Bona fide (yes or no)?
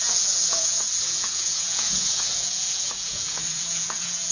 no